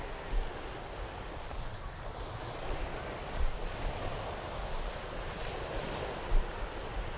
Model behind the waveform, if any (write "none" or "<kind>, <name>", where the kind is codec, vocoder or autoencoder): none